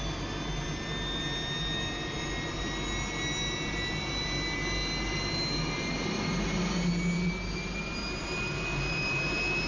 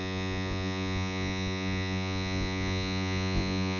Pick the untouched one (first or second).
first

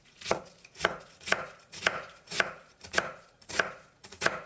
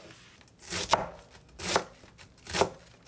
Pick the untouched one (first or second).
second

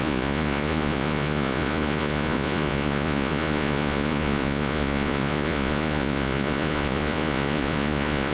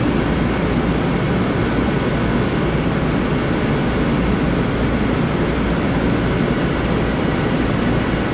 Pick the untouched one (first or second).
second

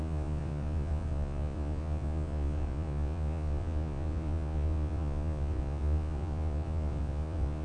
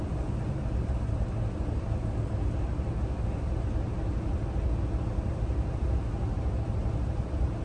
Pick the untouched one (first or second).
second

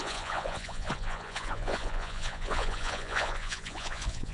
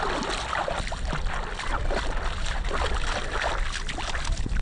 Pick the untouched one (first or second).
second